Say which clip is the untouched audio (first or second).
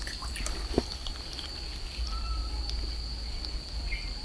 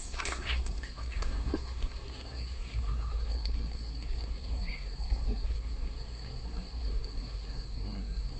first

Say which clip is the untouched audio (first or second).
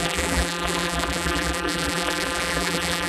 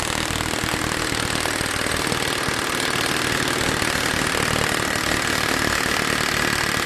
second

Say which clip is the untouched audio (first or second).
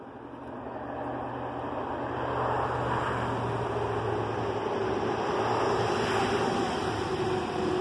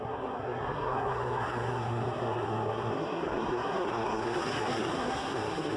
first